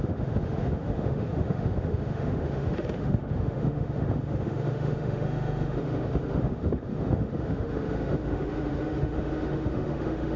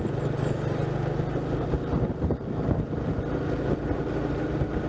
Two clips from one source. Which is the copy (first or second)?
first